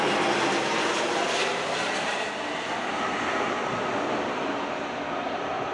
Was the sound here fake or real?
real